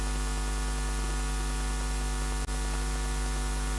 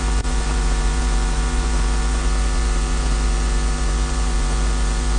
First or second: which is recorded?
first